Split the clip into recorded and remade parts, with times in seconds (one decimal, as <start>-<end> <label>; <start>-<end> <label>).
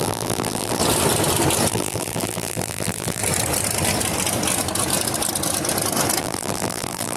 0.0-0.8 remade; 0.8-1.7 recorded; 1.7-3.2 remade; 3.2-6.2 recorded; 6.2-7.2 remade